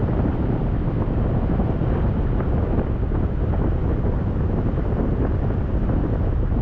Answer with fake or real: real